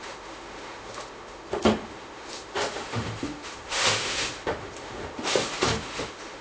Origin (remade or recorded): remade